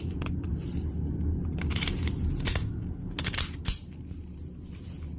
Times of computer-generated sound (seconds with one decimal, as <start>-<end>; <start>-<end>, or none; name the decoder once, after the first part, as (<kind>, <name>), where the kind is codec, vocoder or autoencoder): none